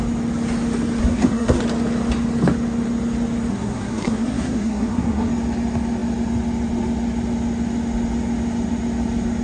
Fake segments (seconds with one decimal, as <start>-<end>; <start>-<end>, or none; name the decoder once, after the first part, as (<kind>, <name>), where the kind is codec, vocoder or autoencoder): 1.0-1.6 (codec, SNAC); 3.5-5.3